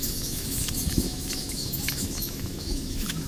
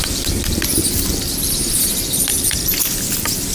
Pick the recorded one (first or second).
second